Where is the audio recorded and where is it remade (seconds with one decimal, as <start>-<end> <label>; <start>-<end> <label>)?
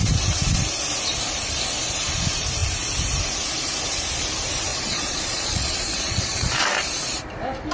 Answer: 0.0-4.7 recorded; 4.7-6.5 remade; 6.5-7.7 recorded